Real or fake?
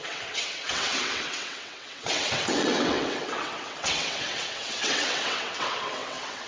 fake